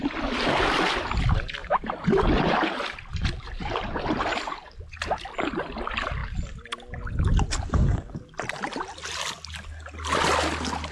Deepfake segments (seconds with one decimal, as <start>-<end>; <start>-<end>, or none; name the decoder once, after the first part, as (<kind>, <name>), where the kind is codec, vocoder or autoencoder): 1.6-4.8 (vocoder, BigVGAN v2)